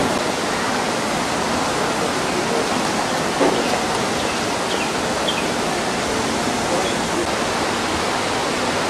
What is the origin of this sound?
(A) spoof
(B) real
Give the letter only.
B